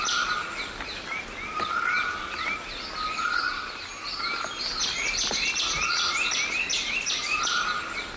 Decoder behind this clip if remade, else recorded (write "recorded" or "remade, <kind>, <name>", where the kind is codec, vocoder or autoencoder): recorded